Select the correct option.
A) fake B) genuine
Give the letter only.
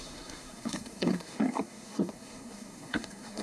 A